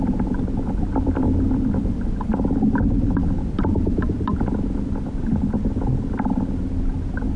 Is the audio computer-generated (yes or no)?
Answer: no